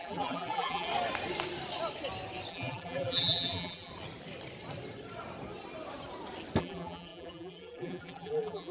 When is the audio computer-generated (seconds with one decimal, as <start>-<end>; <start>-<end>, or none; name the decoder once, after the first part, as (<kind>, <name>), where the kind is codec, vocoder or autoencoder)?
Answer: 0.0-0.9 (vocoder, BigVGAN v2); 2.5-3.9; 6.6-8.7